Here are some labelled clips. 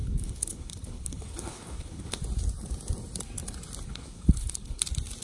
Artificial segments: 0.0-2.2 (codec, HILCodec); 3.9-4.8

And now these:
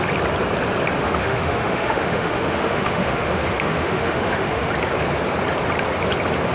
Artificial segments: 1.0-4.7 (autoencoder, DAC-VAE)

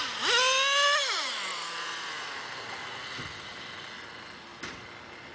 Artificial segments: none

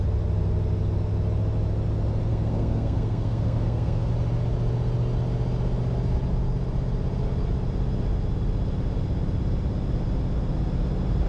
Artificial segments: 2.3-4.1 (codec, SNAC)

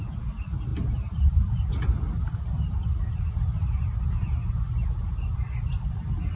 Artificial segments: none

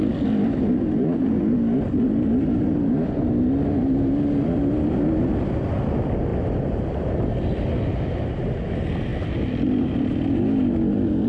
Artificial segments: 10.6-11.3 (vocoder, BigVGAN v2)